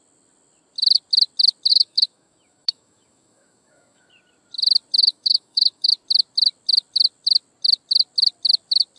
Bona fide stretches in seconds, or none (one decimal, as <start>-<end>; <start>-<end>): 0.0-1.7; 4.1-5.0; 5.9-9.0